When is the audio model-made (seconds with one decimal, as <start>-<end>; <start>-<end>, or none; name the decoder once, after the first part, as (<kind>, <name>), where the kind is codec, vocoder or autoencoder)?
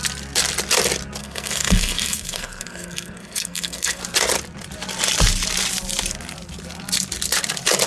1.2-4.0 (codec, SNAC)